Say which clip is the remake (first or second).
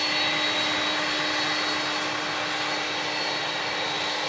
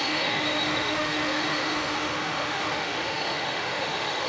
second